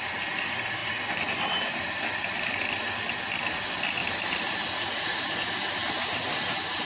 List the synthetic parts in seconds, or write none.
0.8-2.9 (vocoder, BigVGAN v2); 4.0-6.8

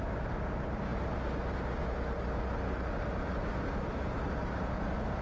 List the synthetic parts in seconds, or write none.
none

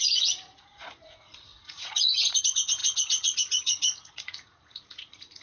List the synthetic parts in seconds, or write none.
0.0-5.4 (vocoder, Vocos)

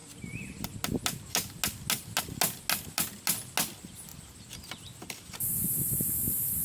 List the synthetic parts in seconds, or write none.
none